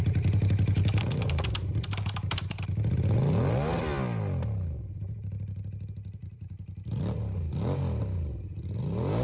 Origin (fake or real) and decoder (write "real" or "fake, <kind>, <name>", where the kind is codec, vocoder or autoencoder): real